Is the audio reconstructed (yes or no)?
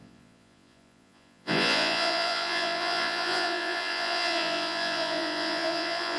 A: yes